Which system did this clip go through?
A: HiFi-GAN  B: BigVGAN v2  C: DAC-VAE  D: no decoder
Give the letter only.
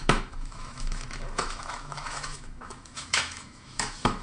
C